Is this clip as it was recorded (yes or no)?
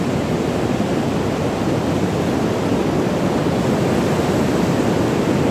yes